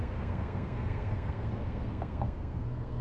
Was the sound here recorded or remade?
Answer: remade